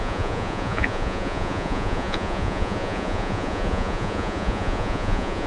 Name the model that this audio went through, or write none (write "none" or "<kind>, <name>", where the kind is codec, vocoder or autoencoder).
vocoder, Vocos